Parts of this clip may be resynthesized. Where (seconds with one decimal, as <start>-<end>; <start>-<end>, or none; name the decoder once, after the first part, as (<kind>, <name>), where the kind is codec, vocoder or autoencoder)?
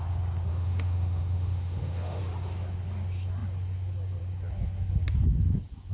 0.5-2.2 (autoencoder, DAC-VAE)